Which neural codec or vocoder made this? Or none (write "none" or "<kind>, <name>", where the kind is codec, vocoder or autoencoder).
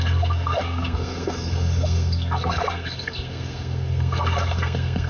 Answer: codec, SNAC